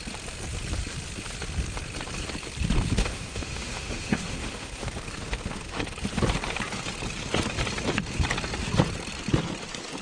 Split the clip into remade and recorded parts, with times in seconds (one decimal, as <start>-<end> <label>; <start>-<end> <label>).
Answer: 0.0-3.0 recorded; 3.0-4.9 remade; 4.9-10.0 recorded